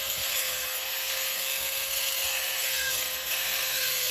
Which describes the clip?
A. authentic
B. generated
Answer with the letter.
B